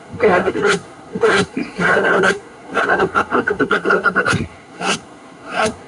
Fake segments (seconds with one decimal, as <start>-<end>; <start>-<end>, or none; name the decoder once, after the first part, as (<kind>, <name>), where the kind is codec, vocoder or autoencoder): 0.0-5.9 (codec, SNAC)